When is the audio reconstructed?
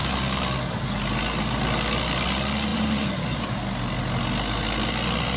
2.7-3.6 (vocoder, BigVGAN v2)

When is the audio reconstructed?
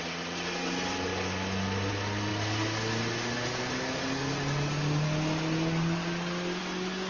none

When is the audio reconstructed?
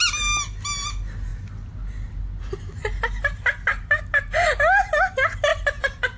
5.5-6.2 (vocoder, BigVGAN v2)